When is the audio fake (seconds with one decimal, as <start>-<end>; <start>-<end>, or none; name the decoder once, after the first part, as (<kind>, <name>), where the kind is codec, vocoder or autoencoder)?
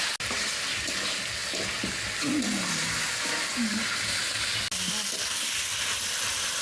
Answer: none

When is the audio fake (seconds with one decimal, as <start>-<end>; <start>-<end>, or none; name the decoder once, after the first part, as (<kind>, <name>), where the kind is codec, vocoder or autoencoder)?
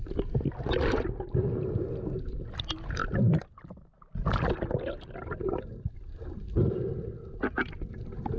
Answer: none